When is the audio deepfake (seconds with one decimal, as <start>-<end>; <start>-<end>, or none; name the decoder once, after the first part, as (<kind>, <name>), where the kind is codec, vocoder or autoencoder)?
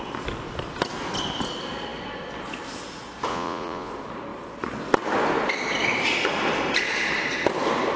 3.3-3.9 (vocoder, Vocos)